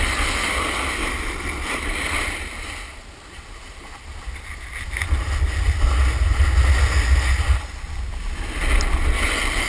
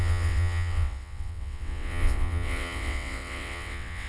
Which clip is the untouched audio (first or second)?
first